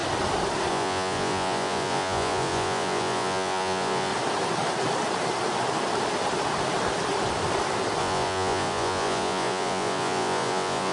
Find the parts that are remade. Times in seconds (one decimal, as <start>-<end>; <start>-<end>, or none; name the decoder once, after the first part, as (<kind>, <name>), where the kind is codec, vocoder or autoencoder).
0.7-4.1 (vocoder, Vocos); 8.0-10.9